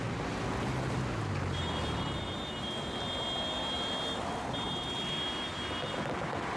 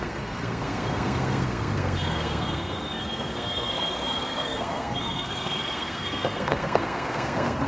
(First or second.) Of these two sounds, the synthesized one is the second